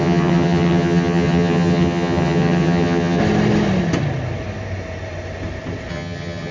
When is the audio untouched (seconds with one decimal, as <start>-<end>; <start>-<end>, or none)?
3.2-5.9